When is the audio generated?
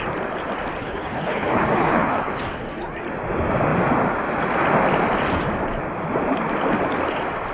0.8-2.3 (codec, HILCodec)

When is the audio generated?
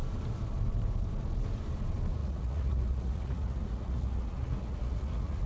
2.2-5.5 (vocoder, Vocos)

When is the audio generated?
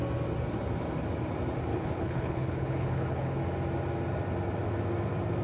1.7-3.4 (codec, HILCodec)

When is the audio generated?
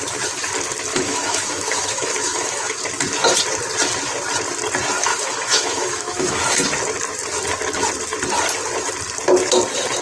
0.9-2.8 (autoencoder, DAC-VAE); 5.1-6.4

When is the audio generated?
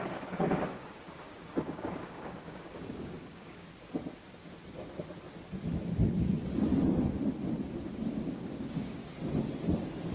0.0-3.6 (codec, DAC); 8.3-9.0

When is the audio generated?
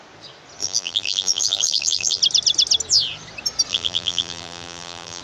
0.6-2.2 (vocoder, BigVGAN v2); 3.7-5.2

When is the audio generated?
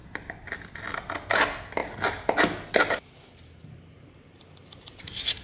0.0-0.8 (vocoder, BigVGAN v2)